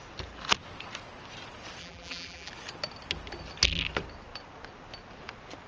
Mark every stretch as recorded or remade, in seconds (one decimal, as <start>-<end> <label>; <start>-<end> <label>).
0.0-1.8 recorded; 1.8-2.5 remade; 2.5-5.7 recorded